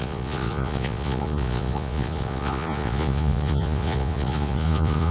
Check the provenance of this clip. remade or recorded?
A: remade